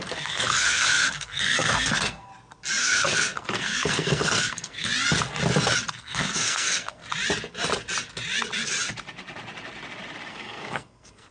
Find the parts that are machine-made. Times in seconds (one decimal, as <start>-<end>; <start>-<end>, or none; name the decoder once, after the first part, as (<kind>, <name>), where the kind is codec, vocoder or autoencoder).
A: 0.0-2.3 (codec, SNAC); 2.8-4.9; 5.9-7.0; 10.3-11.3